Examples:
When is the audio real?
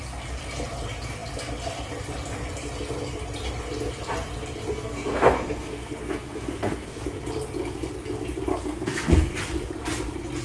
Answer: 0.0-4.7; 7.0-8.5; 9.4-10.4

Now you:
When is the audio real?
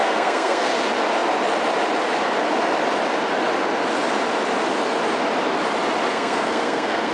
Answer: 0.7-6.1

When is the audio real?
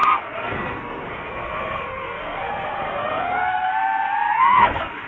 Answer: 3.7-4.3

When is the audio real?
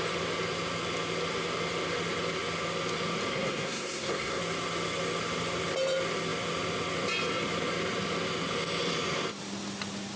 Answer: 0.0-3.3; 4.4-10.2